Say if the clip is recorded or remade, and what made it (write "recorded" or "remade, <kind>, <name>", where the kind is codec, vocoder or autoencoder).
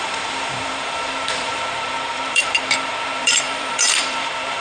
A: remade, vocoder, BigVGAN v2